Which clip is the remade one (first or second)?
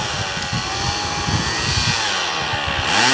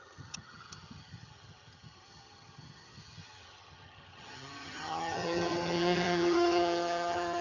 second